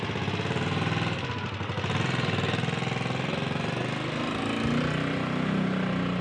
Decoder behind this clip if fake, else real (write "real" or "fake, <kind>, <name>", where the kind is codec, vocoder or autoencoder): real